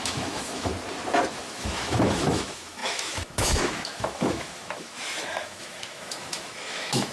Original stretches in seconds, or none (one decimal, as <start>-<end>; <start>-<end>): 0.7-1.3